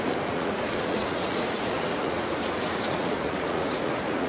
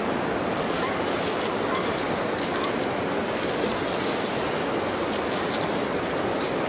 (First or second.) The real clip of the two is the second